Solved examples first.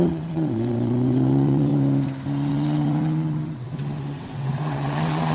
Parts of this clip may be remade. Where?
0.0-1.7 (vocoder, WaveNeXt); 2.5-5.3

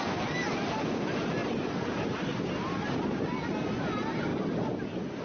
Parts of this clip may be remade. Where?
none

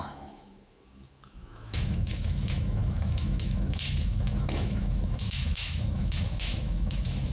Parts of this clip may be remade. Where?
0.0-7.3 (autoencoder, DAC-VAE)

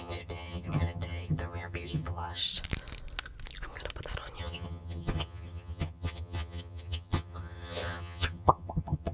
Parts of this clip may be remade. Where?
0.0-2.4 (vocoder, HiFi-GAN); 4.4-9.1

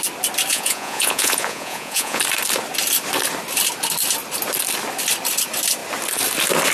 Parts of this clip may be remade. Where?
0.5-2.2 (vocoder, Vocos)